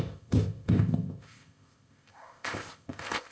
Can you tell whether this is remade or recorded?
remade